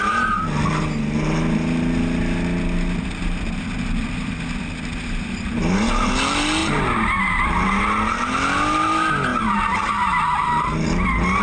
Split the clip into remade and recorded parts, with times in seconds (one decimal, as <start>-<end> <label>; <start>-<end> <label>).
0.0-6.6 recorded; 6.6-7.8 remade; 7.8-11.4 recorded